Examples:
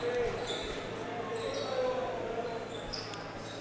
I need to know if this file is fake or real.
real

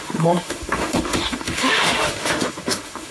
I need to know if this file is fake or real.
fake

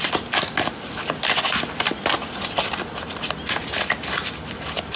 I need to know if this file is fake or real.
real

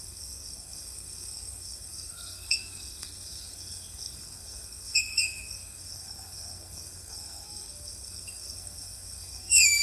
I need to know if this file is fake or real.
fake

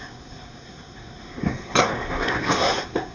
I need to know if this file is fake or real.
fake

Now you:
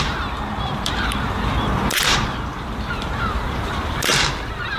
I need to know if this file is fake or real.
fake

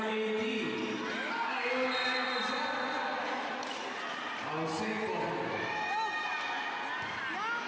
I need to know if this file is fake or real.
real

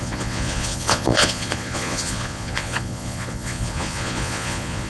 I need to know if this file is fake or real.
fake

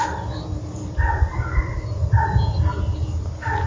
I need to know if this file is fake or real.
real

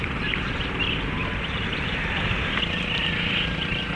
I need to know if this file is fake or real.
real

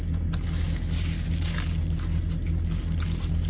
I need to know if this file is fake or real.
real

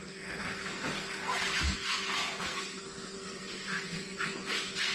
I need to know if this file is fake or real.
fake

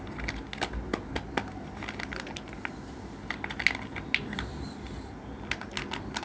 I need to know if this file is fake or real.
real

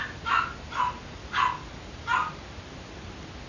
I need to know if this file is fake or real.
real